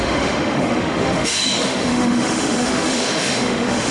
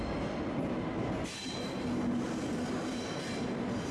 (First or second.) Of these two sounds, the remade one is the first